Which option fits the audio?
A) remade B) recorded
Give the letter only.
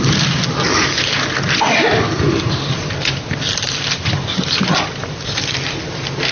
B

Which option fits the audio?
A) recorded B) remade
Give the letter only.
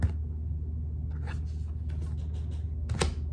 A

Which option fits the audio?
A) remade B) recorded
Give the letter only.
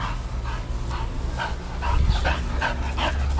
B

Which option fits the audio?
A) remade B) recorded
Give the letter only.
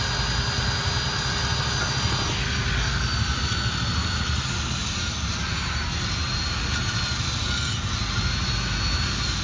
B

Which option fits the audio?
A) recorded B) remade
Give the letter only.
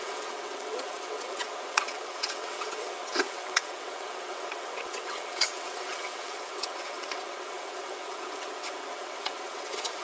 B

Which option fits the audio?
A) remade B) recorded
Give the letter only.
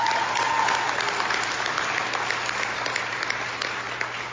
B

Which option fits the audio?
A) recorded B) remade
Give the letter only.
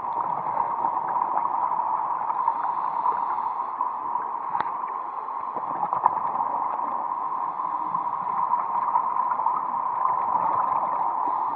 A